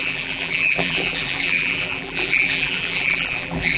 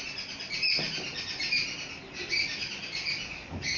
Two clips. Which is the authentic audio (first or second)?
second